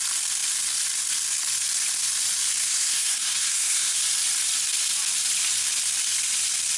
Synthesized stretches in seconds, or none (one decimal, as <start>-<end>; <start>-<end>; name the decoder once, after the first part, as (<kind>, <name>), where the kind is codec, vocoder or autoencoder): 2.6-4.0 (codec, SNAC)